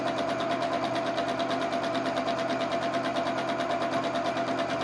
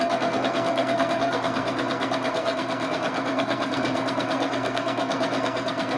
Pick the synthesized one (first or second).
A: second